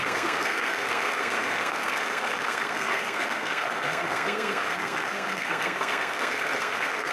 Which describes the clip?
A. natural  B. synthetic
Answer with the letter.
B